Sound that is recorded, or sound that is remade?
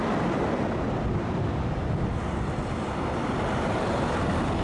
recorded